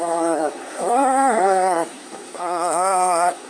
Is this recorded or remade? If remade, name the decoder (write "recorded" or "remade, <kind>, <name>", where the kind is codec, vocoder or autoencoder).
remade, codec, SNAC